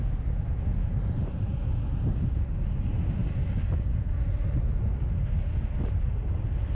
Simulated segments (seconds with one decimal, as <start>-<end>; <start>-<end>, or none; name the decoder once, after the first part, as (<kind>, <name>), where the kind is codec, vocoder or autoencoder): none